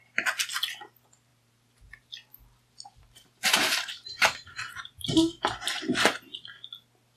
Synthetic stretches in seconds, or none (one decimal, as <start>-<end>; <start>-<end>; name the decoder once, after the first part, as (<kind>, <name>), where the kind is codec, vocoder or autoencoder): 1.3-4.7 (vocoder, BigVGAN v2)